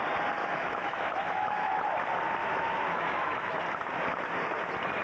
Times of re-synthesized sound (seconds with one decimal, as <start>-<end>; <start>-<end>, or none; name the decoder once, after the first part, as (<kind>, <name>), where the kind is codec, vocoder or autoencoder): 0.4-1.8 (autoencoder, DAC-VAE); 2.4-3.6